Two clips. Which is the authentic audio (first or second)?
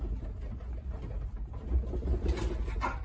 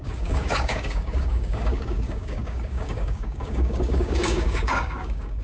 first